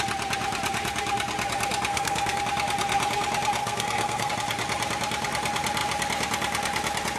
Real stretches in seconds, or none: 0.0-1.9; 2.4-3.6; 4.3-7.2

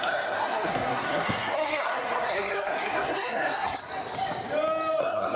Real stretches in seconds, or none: 3.8-5.0

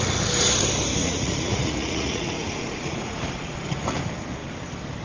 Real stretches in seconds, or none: 0.0-1.0; 4.0-5.0

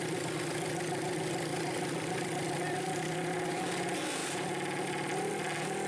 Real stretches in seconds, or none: 0.0-1.5; 3.0-5.9